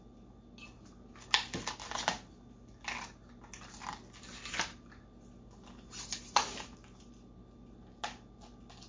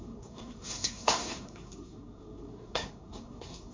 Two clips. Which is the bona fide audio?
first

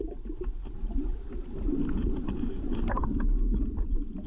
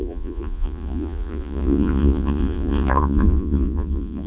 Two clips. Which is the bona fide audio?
first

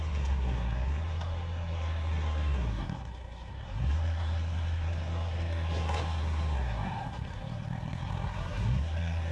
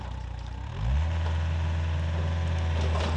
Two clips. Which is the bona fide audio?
second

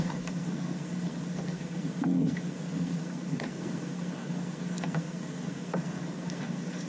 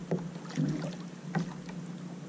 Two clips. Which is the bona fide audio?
second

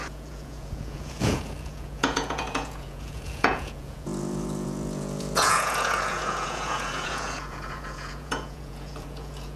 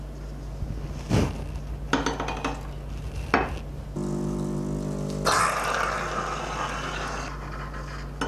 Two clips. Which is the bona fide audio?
second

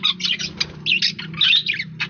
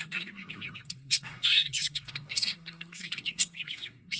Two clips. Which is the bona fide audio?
first